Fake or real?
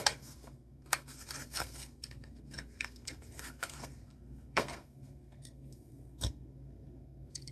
fake